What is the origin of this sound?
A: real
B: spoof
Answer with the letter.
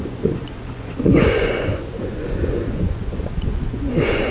B